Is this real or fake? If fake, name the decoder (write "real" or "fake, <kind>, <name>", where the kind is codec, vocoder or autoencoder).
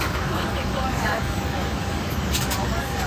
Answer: fake, codec, DAC